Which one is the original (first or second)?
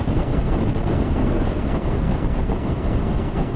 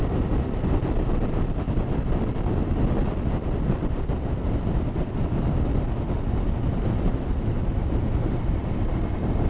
second